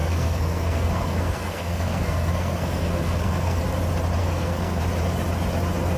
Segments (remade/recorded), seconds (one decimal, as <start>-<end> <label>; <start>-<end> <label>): 0.0-3.6 remade; 3.6-4.2 recorded; 4.2-4.8 remade; 4.8-6.0 recorded